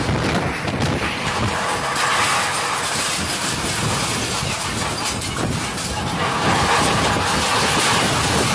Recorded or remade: recorded